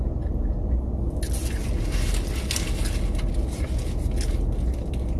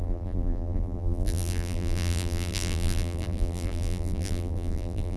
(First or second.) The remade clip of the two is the second